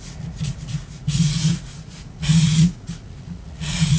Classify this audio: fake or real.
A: fake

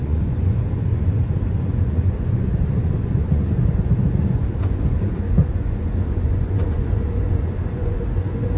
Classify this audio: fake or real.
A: fake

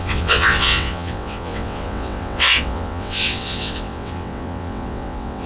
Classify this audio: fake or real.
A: fake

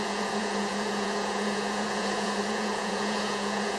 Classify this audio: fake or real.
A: fake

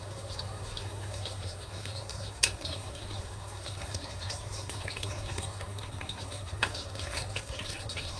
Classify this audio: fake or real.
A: fake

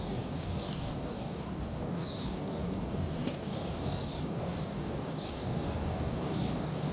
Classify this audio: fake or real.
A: fake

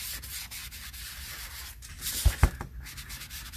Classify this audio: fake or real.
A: real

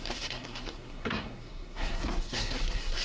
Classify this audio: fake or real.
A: fake